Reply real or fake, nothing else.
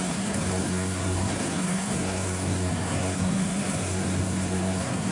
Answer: fake